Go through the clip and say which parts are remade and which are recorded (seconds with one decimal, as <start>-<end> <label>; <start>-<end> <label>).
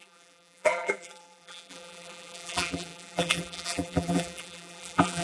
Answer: 0.0-5.2 remade